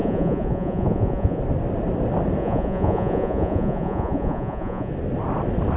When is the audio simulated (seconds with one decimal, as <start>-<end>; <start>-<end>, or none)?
0.0-1.4; 2.4-4.9